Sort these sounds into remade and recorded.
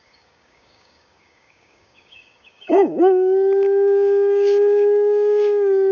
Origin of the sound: remade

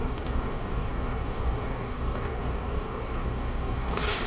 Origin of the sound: remade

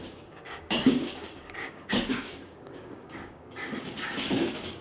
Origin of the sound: remade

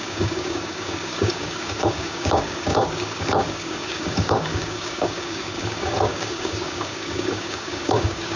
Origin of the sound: remade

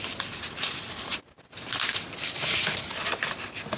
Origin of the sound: recorded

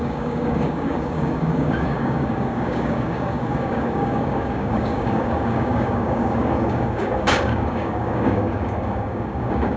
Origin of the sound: remade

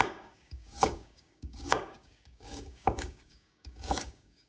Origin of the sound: remade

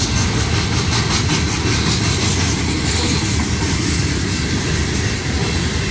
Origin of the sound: recorded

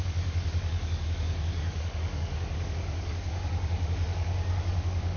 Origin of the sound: remade